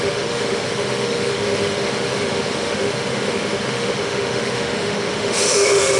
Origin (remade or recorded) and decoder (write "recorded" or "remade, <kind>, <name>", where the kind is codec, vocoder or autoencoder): remade, autoencoder, DAC-VAE